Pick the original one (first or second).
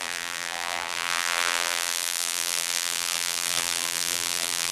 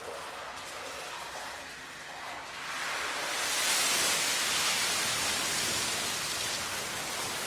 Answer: second